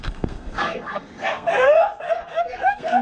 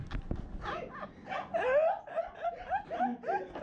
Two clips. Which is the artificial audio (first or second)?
first